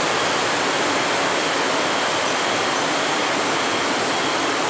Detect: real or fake real